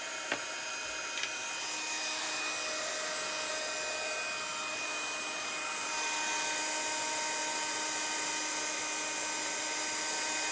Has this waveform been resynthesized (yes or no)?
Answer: no